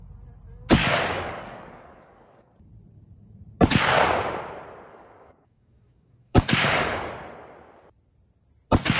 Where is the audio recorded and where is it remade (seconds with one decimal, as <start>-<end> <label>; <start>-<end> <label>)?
0.0-0.8 recorded; 0.8-2.5 remade; 2.5-4.9 recorded; 4.9-7.1 remade; 7.1-9.0 recorded